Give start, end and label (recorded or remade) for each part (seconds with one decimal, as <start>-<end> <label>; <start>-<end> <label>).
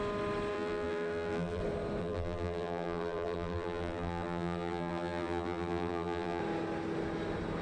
0.0-0.5 recorded; 0.5-1.6 remade; 1.6-2.0 recorded; 2.0-6.4 remade; 6.4-7.6 recorded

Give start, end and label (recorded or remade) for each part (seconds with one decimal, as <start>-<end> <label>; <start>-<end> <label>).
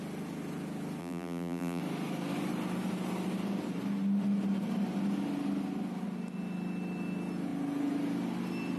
0.0-1.0 recorded; 1.0-1.8 remade; 1.8-8.8 recorded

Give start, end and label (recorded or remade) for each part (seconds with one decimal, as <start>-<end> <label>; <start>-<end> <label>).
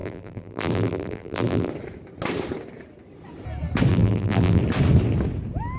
0.0-1.7 remade; 1.7-3.9 recorded; 3.9-4.6 remade; 4.6-5.8 recorded